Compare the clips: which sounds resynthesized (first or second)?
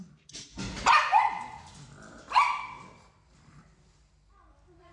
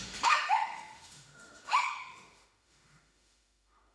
second